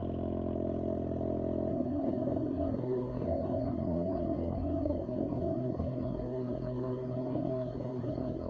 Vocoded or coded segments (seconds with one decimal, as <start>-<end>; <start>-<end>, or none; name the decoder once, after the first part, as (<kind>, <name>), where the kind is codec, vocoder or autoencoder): 1.7-8.5 (codec, SNAC)